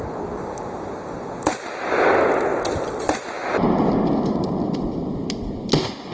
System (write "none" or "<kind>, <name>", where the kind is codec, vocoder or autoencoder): none